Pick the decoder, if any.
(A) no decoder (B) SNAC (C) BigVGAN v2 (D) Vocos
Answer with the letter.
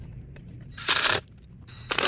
C